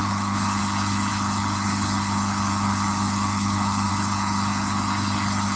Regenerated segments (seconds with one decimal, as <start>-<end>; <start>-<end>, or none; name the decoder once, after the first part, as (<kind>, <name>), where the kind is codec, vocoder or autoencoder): 0.0-5.6 (codec, HILCodec)